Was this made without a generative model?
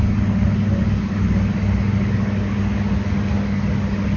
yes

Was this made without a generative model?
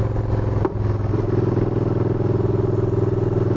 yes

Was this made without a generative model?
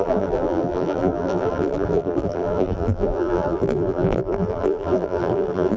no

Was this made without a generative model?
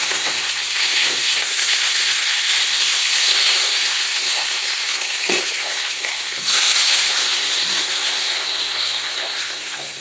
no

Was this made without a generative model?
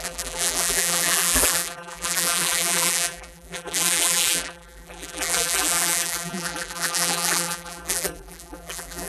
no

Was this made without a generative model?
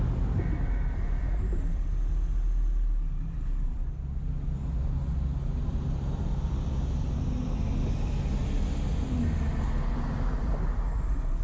yes